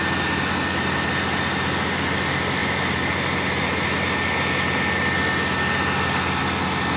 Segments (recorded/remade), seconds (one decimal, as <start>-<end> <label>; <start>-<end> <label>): 0.0-7.0 recorded